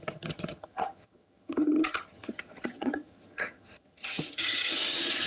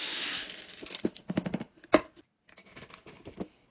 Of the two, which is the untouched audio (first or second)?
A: second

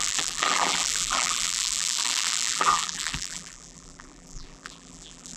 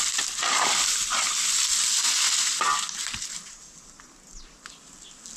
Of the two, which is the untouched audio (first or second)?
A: second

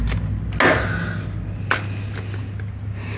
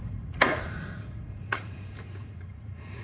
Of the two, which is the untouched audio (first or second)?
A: first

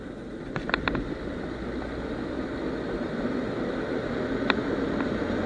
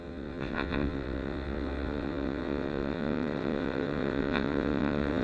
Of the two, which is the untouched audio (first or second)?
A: first